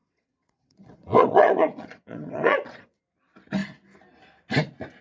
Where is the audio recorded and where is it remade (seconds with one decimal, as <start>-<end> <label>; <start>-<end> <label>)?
0.0-3.0 remade; 3.0-5.0 recorded